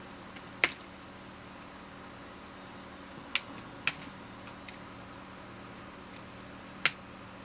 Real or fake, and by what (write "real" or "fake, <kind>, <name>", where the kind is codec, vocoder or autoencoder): real